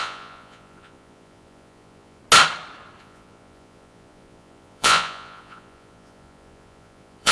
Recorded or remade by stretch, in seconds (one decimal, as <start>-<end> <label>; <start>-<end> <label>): 0.0-2.2 remade; 2.2-3.0 recorded; 3.0-7.3 remade